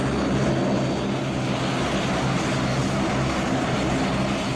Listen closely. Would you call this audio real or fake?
real